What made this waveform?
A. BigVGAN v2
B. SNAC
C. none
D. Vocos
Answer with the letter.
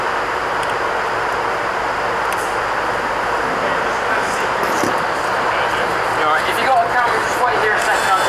C